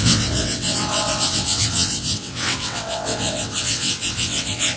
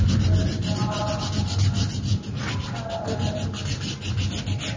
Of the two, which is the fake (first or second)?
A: first